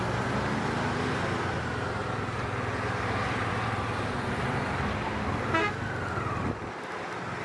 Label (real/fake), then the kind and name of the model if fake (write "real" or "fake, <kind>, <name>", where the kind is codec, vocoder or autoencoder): real